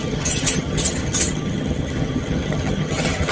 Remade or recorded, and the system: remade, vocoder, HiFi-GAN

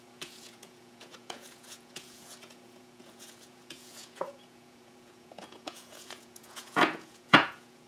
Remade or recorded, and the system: remade, vocoder, Vocos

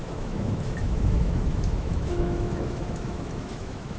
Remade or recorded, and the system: remade, autoencoder, DAC-VAE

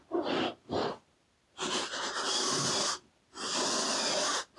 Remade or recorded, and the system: recorded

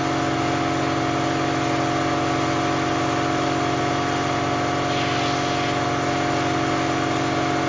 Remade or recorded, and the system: recorded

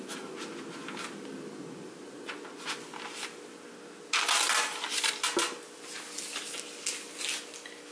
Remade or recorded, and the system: recorded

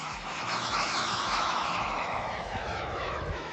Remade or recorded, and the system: remade, autoencoder, DAC-VAE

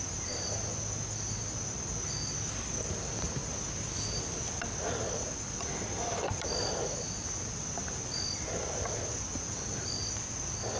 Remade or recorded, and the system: recorded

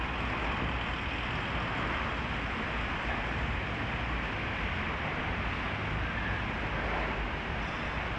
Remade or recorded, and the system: recorded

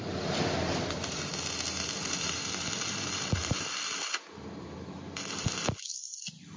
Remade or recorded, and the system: recorded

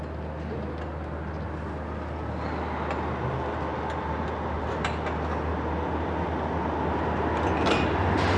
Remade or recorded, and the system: recorded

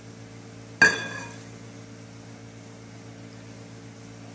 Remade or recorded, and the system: recorded